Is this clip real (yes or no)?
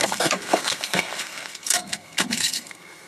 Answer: no